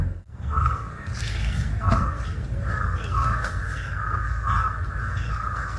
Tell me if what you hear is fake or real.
fake